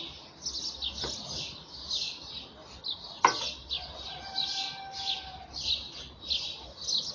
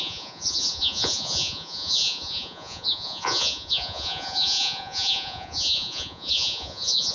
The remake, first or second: second